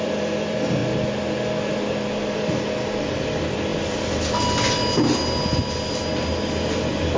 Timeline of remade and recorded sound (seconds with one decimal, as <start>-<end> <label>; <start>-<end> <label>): 0.0-0.8 remade; 0.8-3.1 recorded; 3.1-3.7 remade; 3.7-7.2 recorded